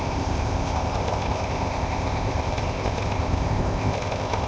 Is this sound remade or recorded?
remade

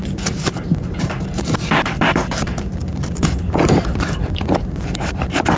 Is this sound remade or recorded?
remade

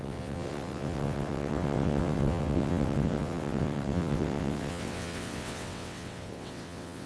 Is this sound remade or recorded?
remade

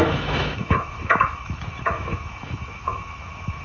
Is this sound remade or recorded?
remade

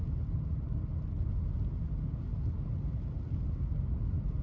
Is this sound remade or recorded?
recorded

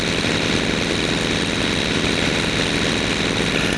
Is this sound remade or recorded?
recorded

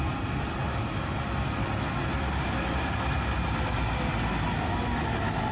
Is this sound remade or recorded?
recorded